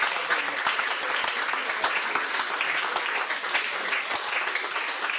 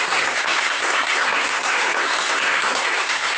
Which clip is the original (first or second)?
first